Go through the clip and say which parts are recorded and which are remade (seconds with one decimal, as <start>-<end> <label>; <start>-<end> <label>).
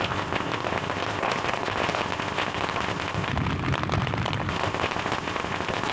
0.0-3.3 remade; 3.3-4.5 recorded; 4.5-5.9 remade